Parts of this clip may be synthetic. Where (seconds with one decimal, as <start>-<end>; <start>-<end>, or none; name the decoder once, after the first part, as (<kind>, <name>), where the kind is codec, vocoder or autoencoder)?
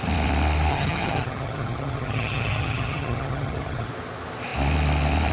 0.7-3.9 (vocoder, HiFi-GAN)